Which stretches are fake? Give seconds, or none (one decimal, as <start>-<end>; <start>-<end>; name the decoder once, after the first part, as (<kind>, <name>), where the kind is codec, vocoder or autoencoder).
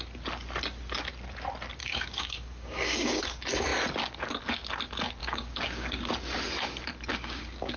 1.8-3.2 (codec, DAC); 5.2-6.1; 7.1-7.8